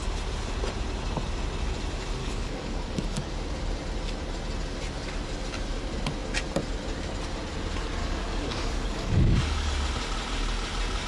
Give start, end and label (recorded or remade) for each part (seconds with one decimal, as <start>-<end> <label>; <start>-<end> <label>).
0.0-2.2 recorded; 2.2-3.3 remade; 3.3-8.0 recorded; 8.0-9.7 remade; 9.7-11.1 recorded